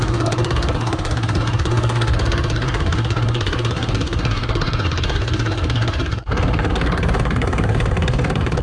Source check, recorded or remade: remade